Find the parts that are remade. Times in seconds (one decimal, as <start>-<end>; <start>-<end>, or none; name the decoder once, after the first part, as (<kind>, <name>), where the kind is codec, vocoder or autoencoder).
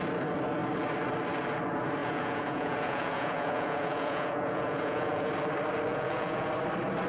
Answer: 2.0-5.3 (vocoder, Vocos); 5.9-6.5